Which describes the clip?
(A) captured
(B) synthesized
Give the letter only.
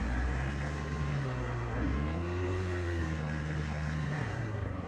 B